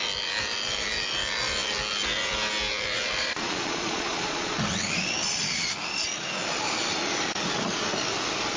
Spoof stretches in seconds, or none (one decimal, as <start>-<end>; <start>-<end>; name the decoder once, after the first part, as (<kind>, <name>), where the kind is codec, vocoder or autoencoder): 3.2-4.5 (vocoder, Vocos)